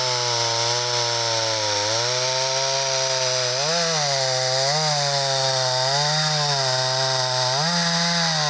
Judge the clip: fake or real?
real